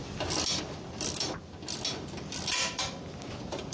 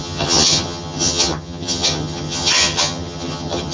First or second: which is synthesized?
second